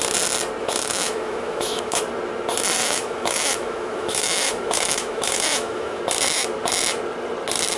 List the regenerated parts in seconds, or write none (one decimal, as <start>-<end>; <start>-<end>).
0.6-2.0; 2.8-6.0